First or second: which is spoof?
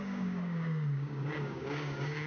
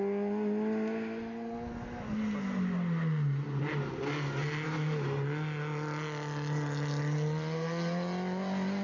first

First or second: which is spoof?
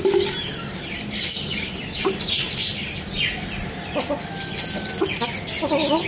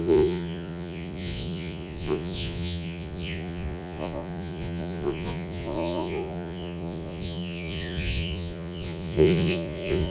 second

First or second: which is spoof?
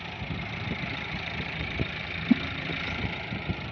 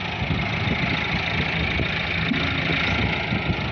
first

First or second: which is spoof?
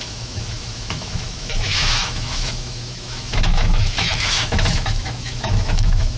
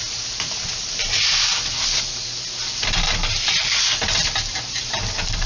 first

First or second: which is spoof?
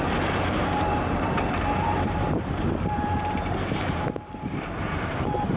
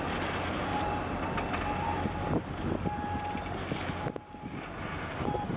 first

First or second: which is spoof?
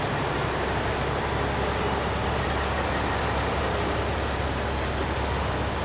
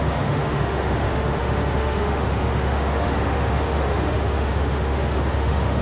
second